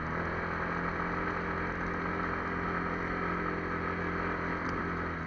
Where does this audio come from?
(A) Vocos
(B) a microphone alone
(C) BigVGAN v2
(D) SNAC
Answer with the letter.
B